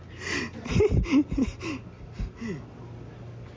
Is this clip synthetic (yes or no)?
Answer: no